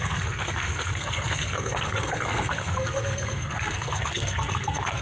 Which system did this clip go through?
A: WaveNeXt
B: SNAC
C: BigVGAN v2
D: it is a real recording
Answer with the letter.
B